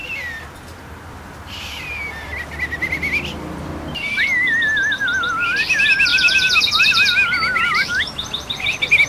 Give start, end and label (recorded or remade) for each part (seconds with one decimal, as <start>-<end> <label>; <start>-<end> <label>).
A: 0.0-9.1 recorded